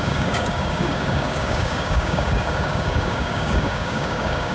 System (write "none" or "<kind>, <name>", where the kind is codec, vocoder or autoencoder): codec, DAC